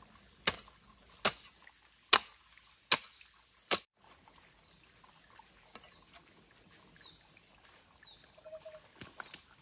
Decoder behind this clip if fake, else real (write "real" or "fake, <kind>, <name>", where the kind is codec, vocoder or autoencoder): real